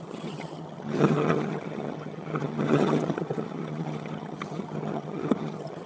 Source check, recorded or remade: remade